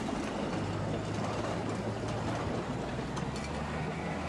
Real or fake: real